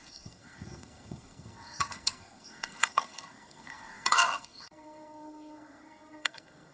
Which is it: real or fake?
fake